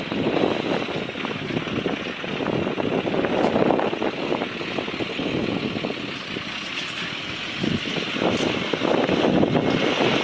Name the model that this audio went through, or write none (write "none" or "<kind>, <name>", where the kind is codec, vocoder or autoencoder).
none